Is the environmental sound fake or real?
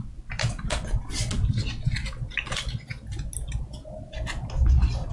real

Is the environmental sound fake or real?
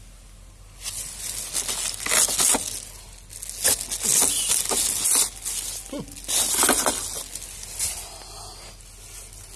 real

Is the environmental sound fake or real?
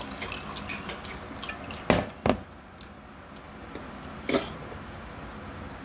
real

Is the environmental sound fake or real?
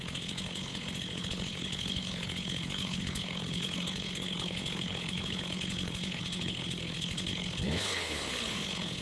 fake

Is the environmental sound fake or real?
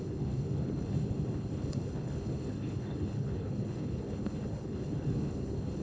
fake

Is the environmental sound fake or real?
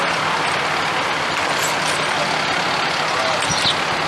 real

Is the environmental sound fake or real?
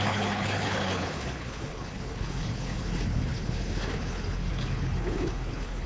fake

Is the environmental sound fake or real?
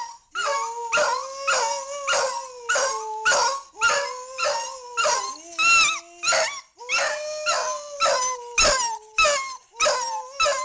real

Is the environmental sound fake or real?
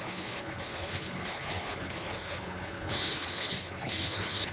fake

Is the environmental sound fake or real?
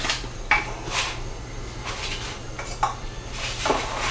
real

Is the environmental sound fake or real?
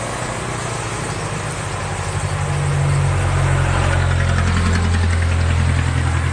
real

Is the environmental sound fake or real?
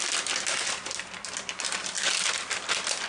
real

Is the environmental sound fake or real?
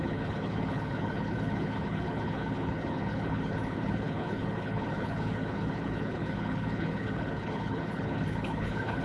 fake